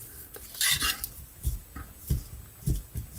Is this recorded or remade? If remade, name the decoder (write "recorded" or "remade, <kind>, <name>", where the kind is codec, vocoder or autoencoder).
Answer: recorded